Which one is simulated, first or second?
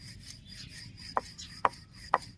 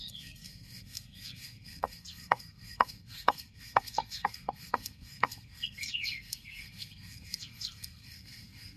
second